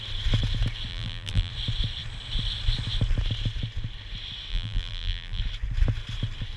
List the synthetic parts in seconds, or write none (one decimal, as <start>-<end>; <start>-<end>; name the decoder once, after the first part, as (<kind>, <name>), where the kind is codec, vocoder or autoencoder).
0.9-1.5 (vocoder, BigVGAN v2); 4.5-5.4